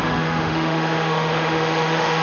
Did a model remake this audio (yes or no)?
yes